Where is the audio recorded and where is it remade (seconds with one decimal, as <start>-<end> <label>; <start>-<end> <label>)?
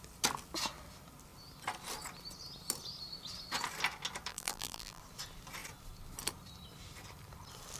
0.0-4.3 recorded; 4.3-5.0 remade; 5.0-7.8 recorded